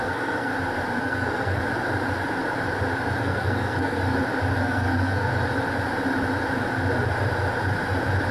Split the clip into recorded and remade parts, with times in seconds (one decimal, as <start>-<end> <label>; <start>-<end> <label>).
0.0-0.5 remade; 0.5-1.0 recorded; 1.0-1.6 remade; 1.6-3.2 recorded; 3.2-4.0 remade; 4.0-4.6 recorded; 4.6-5.3 remade; 5.3-8.3 recorded